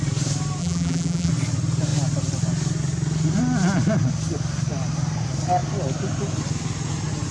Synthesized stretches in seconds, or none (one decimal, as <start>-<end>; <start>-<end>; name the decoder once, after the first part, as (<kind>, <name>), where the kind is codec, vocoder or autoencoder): 0.6-1.3 (vocoder, BigVGAN v2)

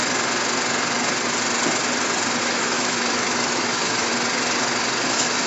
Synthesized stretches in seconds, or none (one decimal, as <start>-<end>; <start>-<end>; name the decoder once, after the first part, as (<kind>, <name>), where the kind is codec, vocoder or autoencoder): 2.4-4.1 (autoencoder, DAC-VAE); 5.1-5.5

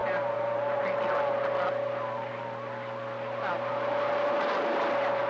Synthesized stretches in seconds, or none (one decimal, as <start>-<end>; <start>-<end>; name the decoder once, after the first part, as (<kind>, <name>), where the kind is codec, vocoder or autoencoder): 0.0-0.8 (vocoder, BigVGAN v2)